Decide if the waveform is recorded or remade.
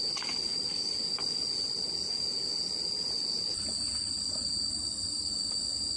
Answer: recorded